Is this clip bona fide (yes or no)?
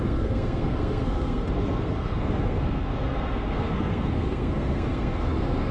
no